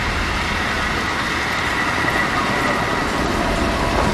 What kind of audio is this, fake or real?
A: real